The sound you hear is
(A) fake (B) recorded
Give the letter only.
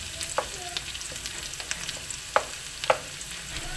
B